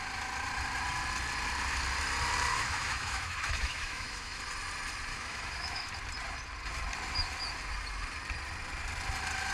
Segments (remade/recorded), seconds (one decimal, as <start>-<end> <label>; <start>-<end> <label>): 0.0-2.5 recorded; 2.5-4.4 remade; 4.4-5.1 recorded; 5.1-5.9 remade; 5.9-9.5 recorded